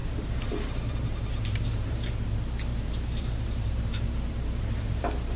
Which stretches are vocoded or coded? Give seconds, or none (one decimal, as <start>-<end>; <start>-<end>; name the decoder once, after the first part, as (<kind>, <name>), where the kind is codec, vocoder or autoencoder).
0.0-2.1 (vocoder, BigVGAN v2); 2.7-5.4